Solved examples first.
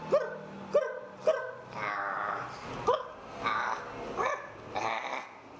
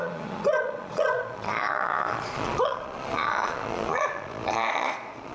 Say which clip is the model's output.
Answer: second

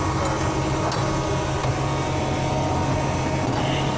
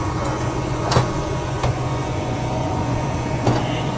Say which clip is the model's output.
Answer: second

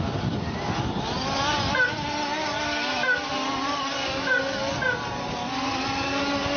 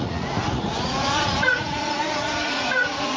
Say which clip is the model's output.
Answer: second